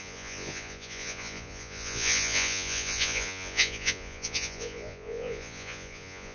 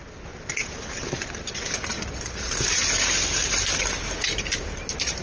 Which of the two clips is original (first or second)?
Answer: second